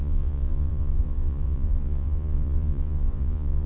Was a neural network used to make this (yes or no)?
yes